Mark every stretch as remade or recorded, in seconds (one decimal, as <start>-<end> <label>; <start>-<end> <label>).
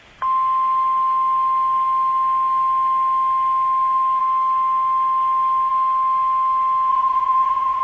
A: 0.0-6.9 recorded; 6.9-7.8 remade